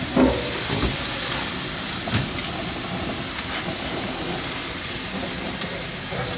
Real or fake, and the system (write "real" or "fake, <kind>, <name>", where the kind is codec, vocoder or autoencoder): real